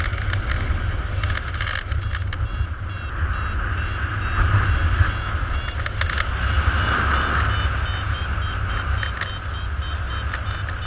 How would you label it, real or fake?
real